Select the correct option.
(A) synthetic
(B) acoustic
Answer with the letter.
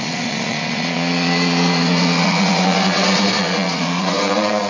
A